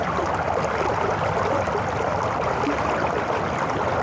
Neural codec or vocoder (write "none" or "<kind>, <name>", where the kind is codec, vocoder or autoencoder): none